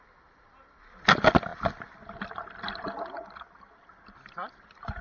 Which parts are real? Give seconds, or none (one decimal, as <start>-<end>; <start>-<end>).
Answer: 0.0-5.0